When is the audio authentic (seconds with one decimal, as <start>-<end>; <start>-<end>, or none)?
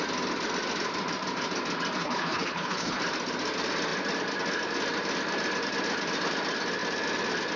0.0-2.0; 3.0-7.6